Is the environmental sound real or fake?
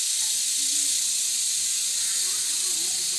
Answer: real